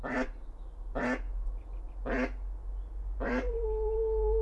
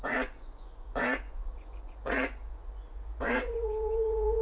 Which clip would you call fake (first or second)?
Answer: second